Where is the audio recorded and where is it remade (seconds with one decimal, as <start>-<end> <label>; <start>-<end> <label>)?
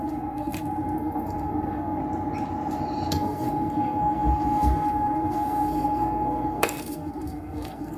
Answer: 0.0-2.0 remade; 2.0-3.1 recorded; 3.1-8.0 remade